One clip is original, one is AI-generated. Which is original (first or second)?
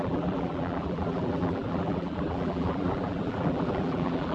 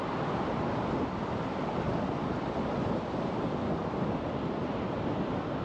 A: second